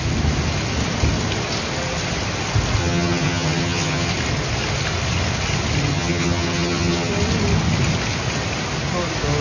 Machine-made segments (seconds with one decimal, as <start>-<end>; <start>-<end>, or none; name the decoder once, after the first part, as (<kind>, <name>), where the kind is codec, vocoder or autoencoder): 2.8-4.1 (vocoder, HiFi-GAN); 5.9-7.1